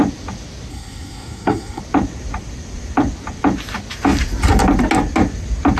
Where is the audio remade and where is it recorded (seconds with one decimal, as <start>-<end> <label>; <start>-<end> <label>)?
0.0-0.7 recorded; 0.7-1.8 remade; 1.8-5.8 recorded